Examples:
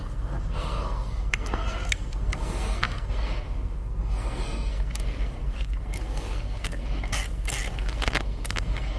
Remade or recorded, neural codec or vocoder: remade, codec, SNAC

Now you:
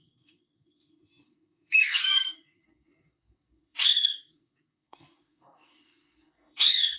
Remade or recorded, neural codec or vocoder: remade, codec, SNAC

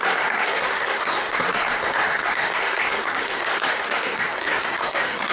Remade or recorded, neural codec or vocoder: remade, codec, SNAC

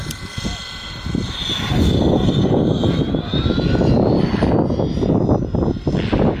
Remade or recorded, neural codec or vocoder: recorded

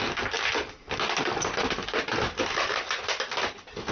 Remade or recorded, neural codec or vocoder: recorded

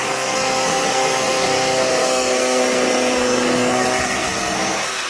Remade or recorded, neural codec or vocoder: remade, codec, SNAC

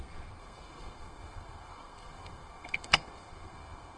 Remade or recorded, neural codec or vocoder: remade, codec, SNAC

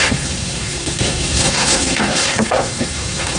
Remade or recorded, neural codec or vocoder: remade, codec, SNAC